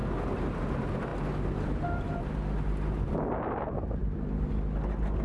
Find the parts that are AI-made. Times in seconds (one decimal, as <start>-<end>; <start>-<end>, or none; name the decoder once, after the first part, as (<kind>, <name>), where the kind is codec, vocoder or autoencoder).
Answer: none